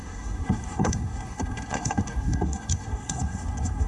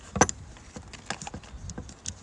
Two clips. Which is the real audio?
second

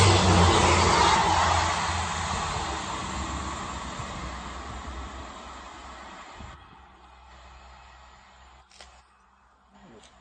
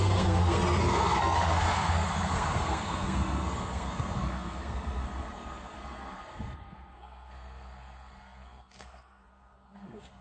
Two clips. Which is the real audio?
first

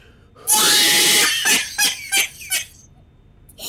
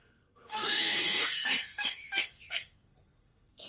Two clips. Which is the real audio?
first